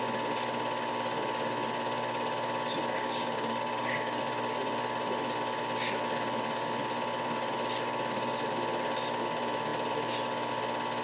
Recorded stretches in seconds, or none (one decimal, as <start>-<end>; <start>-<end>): 0.0-2.9; 4.2-11.0